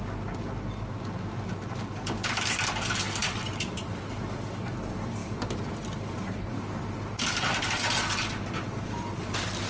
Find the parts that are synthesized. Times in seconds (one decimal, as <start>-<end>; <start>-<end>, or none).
3.2-4.0; 5.2-7.7